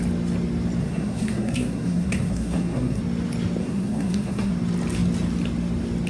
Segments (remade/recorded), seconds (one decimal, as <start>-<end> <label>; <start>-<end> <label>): 0.0-0.8 recorded; 0.8-3.0 remade; 3.0-3.6 recorded; 3.6-4.5 remade; 4.5-6.1 recorded